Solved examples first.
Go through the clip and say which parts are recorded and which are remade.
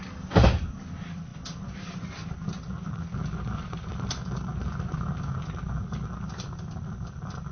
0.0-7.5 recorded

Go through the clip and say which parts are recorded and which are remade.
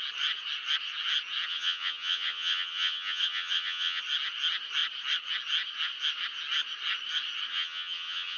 0.0-1.5 recorded; 1.5-4.0 remade; 4.0-7.5 recorded; 7.5-8.4 remade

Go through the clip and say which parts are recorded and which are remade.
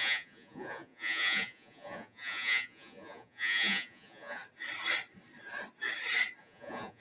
0.0-4.4 remade; 4.4-6.4 recorded; 6.4-7.0 remade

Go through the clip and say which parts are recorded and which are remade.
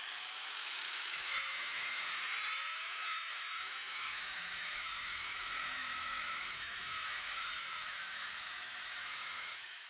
0.0-9.9 remade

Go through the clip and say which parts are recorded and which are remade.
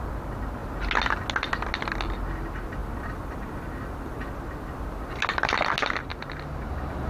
0.0-2.8 recorded; 2.8-4.3 remade; 4.3-7.1 recorded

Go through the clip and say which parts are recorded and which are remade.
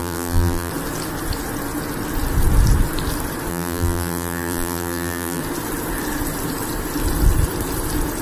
0.0-0.7 remade; 0.7-3.5 recorded; 3.5-5.4 remade; 5.4-8.2 recorded